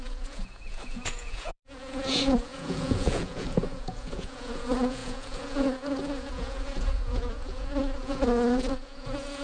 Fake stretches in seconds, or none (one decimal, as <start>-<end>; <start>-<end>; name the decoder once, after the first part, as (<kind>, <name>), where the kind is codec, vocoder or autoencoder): 0.0-9.4 (vocoder, Vocos)